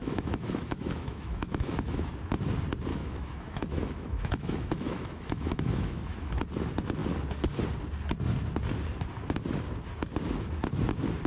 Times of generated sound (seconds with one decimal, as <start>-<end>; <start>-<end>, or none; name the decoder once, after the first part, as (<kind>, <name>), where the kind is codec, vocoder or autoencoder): 0.0-2.1 (autoencoder, DAC-VAE); 2.9-6.3